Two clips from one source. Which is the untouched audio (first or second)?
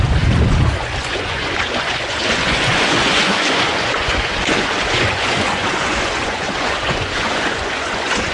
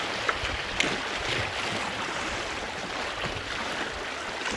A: second